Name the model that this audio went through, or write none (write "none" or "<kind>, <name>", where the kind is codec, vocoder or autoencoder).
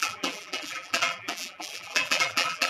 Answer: vocoder, BigVGAN v2